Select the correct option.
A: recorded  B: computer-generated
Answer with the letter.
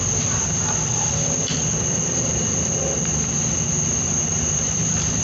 B